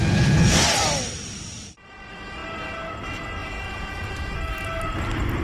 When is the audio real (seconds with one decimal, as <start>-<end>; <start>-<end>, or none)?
0.0-3.4; 4.5-5.4

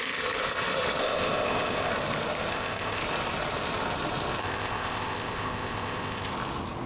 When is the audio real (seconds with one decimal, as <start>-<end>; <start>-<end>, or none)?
0.0-1.0; 1.9-2.5; 3.0-4.4; 6.3-6.9

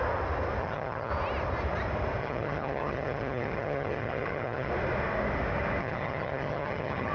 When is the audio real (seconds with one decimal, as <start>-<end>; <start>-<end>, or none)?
0.0-0.6; 1.1-2.2; 4.7-5.8

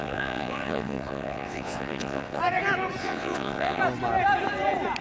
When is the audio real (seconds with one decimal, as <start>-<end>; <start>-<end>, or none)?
2.4-3.0; 3.8-5.0

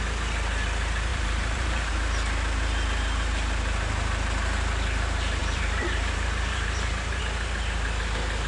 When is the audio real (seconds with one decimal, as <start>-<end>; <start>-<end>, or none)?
0.0-1.1; 1.9-5.4; 7.2-8.5